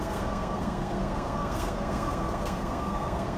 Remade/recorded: remade